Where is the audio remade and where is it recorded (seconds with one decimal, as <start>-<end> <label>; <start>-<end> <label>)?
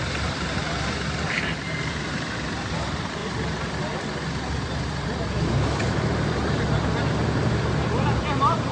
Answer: 0.0-3.2 remade; 3.2-4.6 recorded; 4.6-8.7 remade